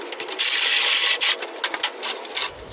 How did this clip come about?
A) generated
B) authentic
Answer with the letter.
B